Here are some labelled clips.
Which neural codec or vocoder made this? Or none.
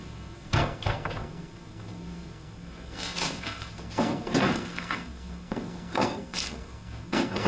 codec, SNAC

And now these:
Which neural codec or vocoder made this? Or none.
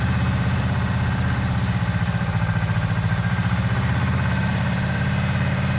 vocoder, BigVGAN v2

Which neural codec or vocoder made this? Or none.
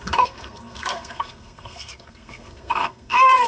codec, SNAC